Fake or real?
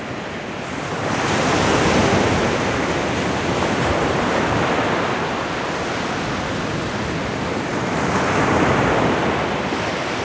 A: real